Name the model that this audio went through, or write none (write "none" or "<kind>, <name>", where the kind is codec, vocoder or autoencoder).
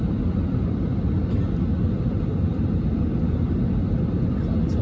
none